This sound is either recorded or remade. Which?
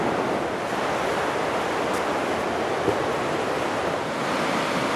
recorded